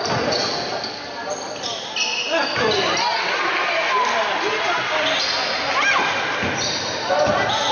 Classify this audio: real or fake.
real